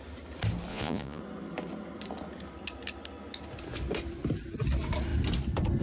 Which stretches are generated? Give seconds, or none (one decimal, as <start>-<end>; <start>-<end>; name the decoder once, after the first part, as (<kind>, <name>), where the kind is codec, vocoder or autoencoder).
0.7-1.2 (vocoder, Vocos)